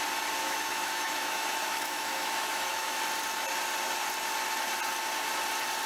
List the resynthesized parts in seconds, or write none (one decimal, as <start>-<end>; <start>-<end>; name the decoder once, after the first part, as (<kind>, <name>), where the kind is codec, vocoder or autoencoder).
0.4-3.0 (autoencoder, DAC-VAE)